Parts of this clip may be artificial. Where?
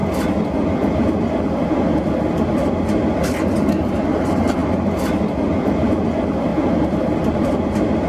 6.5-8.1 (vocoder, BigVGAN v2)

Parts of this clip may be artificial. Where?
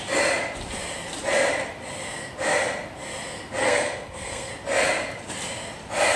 3.6-4.5 (codec, SNAC)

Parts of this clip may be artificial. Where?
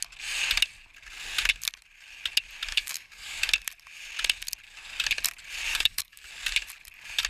2.7-3.4 (codec, DAC); 5.7-6.3